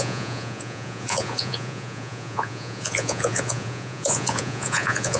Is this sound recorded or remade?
remade